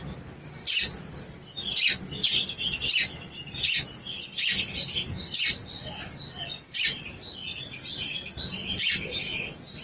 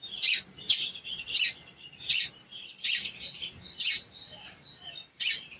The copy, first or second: second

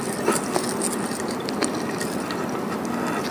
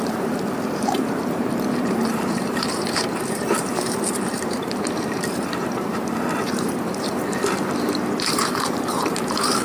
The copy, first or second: second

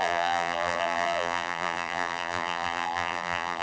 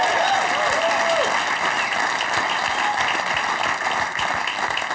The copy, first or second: first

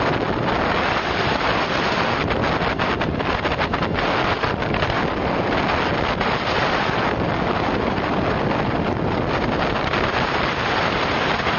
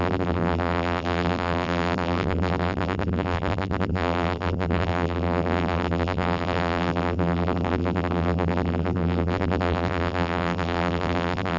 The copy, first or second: second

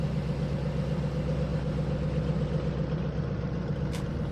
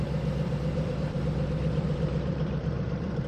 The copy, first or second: second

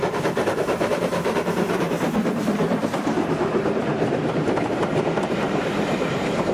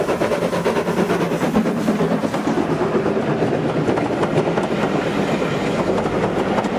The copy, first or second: first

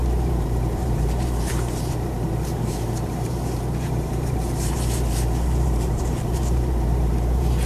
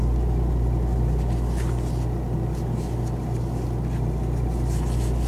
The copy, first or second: first